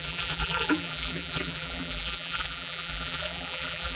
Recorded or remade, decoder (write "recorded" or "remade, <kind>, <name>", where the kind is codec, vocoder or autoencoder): remade, vocoder, BigVGAN v2